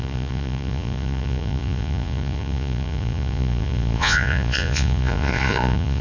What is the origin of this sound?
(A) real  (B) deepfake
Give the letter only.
B